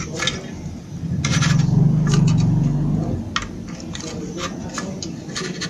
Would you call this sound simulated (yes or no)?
no